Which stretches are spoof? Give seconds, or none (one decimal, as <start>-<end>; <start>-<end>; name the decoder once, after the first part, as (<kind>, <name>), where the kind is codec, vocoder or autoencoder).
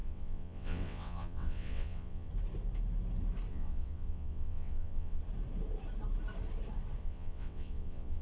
0.0-2.3 (vocoder, WaveNeXt); 3.5-5.2; 7.0-8.2